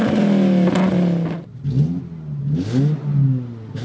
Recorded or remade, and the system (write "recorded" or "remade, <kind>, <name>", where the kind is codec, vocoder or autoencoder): recorded